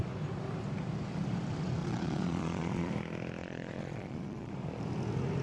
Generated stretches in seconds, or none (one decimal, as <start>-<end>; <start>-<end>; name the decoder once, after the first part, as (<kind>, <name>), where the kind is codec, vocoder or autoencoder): 1.8-2.9 (vocoder, Vocos); 3.4-4.5

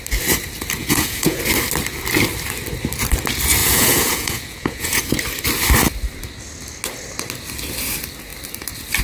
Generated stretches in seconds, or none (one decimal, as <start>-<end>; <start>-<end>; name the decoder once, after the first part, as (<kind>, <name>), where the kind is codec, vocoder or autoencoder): 0.8-1.4 (vocoder, Vocos); 3.6-5.0

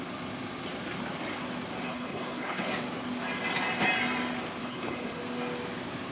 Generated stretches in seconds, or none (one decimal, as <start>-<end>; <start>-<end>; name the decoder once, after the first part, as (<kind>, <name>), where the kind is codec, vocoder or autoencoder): 1.9-2.7 (codec, HILCodec); 4.6-5.2

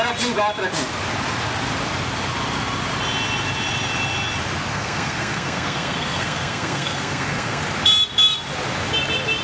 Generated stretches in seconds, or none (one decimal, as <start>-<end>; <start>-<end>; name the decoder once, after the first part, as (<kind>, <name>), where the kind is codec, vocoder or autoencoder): 4.7-7.6 (codec, SNAC)

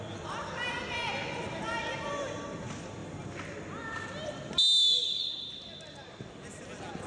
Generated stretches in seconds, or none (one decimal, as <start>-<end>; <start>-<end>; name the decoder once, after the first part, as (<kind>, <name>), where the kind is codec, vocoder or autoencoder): none

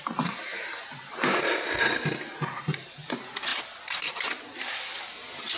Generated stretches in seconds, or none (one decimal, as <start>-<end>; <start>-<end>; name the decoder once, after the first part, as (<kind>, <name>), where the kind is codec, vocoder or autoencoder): 0.0-5.6 (vocoder, BigVGAN v2)